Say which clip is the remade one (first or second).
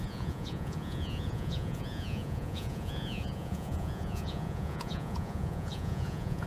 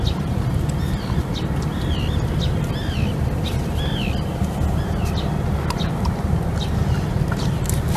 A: first